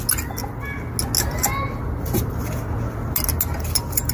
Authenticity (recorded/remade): recorded